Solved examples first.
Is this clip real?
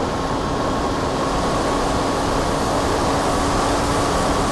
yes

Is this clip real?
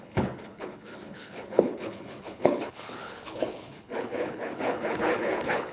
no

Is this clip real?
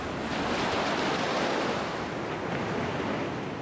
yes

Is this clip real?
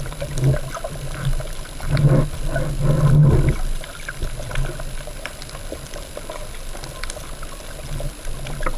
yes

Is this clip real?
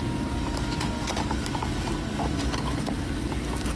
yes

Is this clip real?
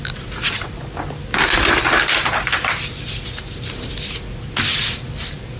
yes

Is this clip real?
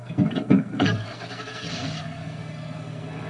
no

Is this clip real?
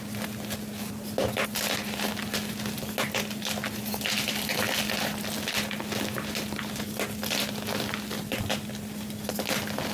yes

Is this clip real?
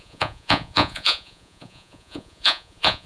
no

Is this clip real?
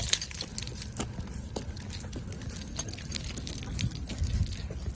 yes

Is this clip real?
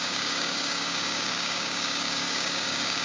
no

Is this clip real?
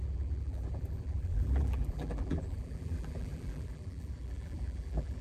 no